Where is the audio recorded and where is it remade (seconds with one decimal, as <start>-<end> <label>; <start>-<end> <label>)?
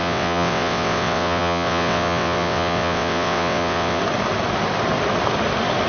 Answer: 0.0-4.0 remade; 4.0-5.9 recorded